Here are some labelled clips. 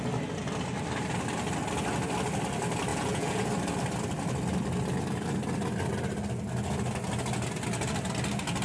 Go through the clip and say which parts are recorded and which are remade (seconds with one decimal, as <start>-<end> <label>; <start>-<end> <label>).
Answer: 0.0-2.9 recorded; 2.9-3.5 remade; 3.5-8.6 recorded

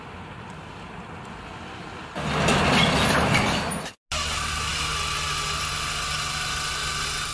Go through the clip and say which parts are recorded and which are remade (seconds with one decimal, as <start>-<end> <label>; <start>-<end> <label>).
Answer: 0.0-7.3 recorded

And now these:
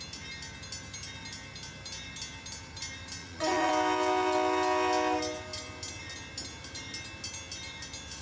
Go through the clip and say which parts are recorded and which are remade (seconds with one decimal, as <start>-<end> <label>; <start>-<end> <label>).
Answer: 0.0-3.2 recorded; 3.2-3.7 remade; 3.7-8.2 recorded